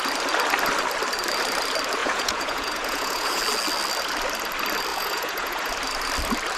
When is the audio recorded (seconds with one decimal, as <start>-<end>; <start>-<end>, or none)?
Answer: 0.0-2.0; 3.4-4.9; 5.7-6.6